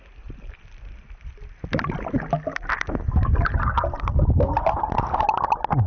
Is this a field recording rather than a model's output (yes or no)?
yes